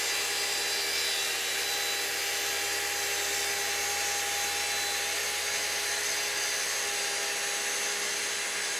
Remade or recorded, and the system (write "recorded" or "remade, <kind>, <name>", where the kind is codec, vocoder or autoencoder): recorded